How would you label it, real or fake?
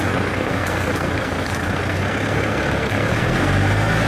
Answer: fake